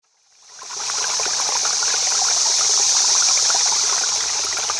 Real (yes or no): yes